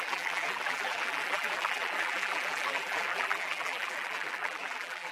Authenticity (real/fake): fake